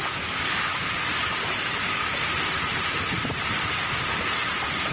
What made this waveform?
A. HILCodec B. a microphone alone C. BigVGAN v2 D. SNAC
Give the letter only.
C